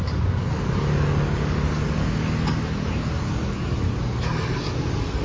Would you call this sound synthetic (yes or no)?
yes